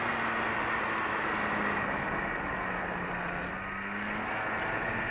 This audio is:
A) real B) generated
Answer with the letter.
A